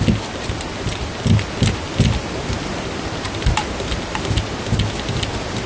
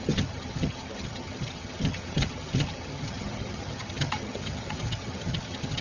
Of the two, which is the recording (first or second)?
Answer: first